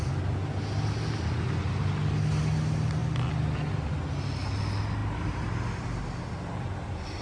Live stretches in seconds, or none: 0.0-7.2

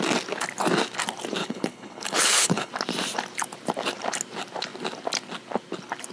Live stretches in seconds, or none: 0.0-1.4; 2.7-6.1

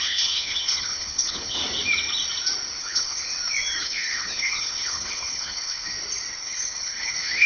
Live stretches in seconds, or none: 1.6-2.8; 3.2-3.8; 5.9-6.4

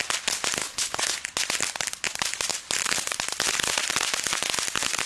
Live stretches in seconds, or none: 0.0-0.6; 1.2-5.1

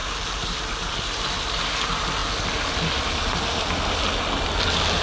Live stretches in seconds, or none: 0.0-5.0

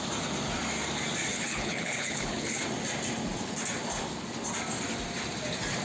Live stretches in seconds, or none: 0.0-1.3; 2.6-5.8

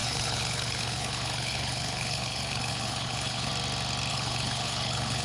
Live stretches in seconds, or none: 3.5-4.1